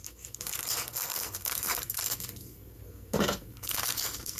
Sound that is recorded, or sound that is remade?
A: remade